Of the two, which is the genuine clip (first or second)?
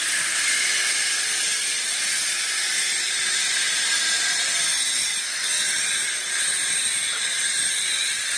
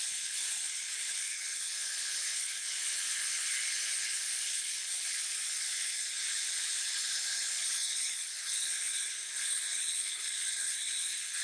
first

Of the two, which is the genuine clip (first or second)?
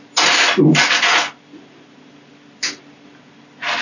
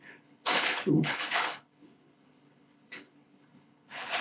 first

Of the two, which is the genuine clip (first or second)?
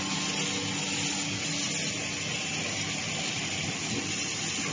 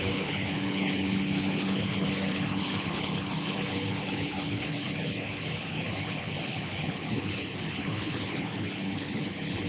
first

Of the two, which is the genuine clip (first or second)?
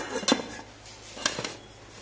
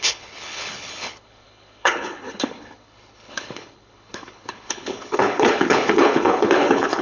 first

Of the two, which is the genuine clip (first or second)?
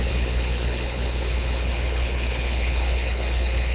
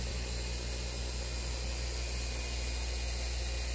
second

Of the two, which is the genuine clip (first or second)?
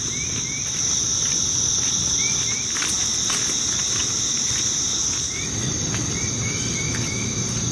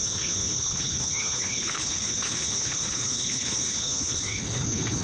first